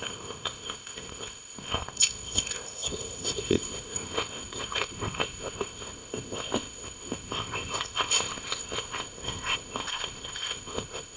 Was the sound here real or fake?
fake